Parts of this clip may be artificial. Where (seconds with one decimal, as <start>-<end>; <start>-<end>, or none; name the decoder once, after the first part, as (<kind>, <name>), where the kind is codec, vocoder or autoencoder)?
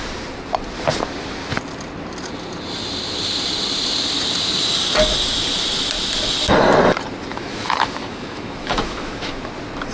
7.3-9.4 (autoencoder, DAC-VAE)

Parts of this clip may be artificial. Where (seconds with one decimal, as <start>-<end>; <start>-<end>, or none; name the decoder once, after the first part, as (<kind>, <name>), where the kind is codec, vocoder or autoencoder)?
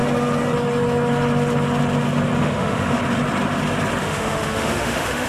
2.4-3.0 (autoencoder, DAC-VAE); 4.0-5.3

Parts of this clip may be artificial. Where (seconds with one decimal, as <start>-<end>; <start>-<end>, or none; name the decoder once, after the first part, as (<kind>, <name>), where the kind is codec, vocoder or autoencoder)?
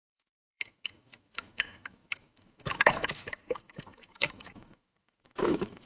0.0-5.9 (autoencoder, DAC-VAE)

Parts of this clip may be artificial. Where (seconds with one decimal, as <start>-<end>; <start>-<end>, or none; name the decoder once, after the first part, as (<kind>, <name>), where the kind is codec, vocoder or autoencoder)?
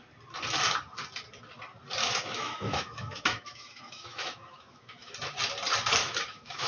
2.0-5.1 (autoencoder, DAC-VAE); 6.0-6.7